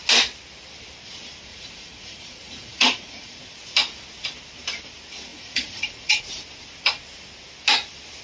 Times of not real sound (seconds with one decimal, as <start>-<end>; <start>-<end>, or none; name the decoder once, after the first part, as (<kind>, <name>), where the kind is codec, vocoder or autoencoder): 1.5-3.4 (vocoder, Vocos); 5.3-6.2